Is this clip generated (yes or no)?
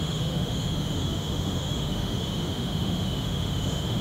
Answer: yes